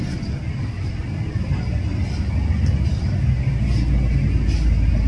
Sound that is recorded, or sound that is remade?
recorded